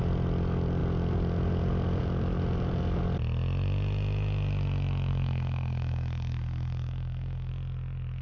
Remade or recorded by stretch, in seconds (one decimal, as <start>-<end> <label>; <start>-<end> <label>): 0.0-5.1 recorded; 5.1-7.5 remade; 7.5-8.2 recorded